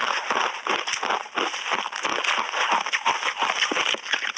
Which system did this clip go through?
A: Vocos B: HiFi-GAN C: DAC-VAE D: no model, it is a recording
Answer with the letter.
D